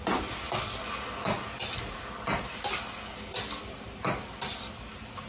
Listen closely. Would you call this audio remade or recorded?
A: recorded